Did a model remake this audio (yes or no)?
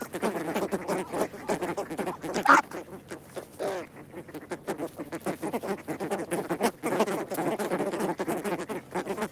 no